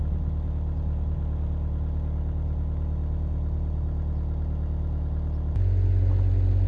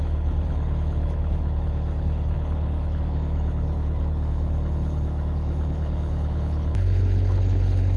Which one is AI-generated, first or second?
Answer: second